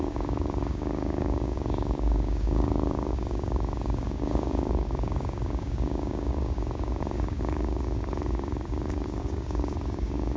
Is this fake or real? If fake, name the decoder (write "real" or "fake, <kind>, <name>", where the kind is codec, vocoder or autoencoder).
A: fake, codec, DAC